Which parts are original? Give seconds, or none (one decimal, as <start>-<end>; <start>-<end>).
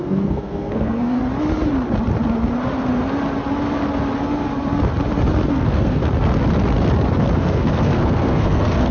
1.2-5.5; 6.0-7.2